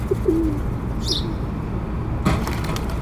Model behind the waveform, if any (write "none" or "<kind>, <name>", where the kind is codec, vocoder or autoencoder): none